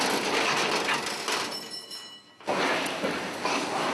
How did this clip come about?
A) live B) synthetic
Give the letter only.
A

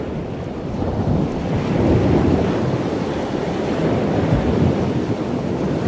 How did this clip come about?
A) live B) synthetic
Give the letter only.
A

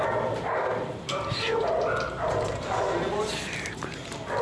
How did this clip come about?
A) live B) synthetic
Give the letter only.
A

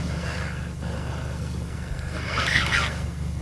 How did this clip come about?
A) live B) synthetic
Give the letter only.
B